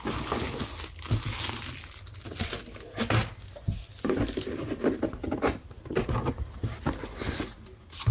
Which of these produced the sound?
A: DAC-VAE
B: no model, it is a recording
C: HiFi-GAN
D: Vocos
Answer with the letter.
B